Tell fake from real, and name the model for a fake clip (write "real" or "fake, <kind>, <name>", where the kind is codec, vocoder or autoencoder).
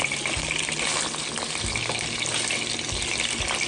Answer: real